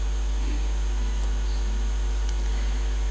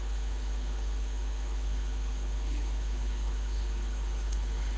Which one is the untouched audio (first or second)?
first